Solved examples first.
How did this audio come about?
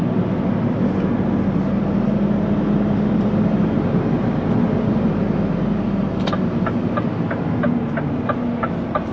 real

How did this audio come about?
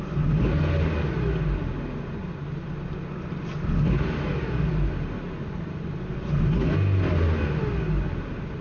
real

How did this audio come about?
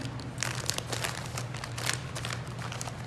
real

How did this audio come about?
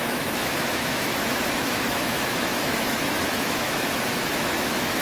fake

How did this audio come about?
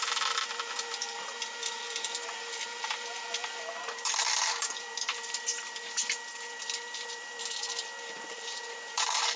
fake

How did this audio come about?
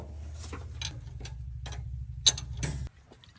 real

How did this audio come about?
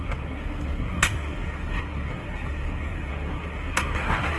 fake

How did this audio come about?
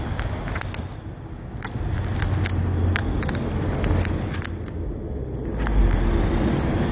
real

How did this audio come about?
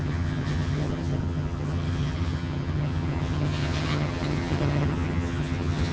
fake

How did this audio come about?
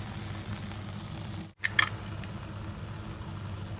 real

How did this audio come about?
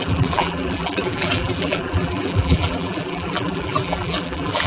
fake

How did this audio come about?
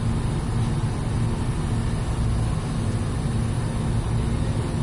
real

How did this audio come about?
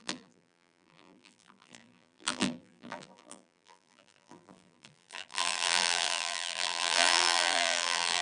fake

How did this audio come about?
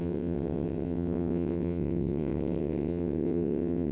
fake